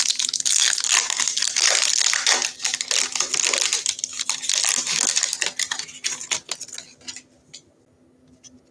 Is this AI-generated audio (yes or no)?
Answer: no